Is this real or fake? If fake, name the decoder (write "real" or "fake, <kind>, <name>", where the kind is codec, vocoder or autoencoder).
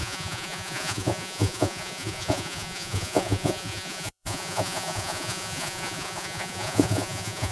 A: fake, vocoder, Vocos